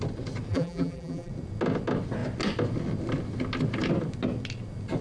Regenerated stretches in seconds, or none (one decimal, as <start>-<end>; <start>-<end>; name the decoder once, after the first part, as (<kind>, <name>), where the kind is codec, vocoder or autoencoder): 0.5-1.3 (vocoder, BigVGAN v2)